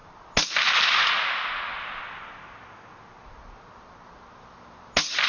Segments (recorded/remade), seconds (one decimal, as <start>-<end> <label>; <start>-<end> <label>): 0.0-5.3 recorded